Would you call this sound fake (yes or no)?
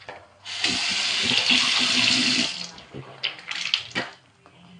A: no